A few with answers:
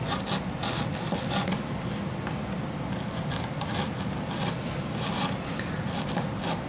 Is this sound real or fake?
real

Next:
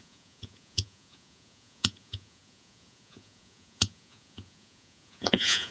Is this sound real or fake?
fake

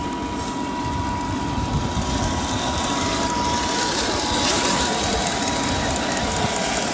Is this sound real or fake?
real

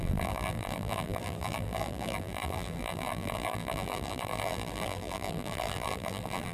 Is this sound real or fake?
fake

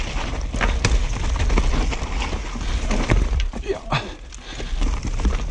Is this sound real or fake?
real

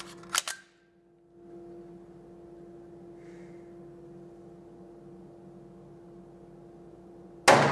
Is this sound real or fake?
real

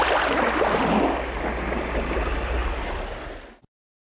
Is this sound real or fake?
real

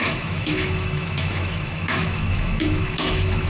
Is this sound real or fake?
fake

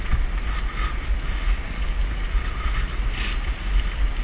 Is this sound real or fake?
real